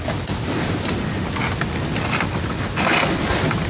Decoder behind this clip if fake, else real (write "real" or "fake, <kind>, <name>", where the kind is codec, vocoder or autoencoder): real